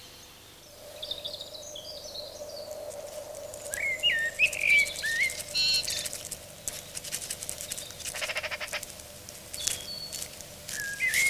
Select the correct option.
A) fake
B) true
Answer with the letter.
B